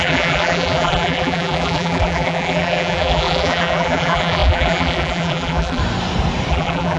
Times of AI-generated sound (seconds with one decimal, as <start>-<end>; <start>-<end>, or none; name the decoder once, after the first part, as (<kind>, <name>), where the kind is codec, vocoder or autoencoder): 0.0-5.8 (vocoder, BigVGAN v2); 6.5-7.0